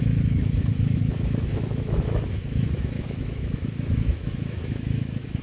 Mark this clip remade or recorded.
remade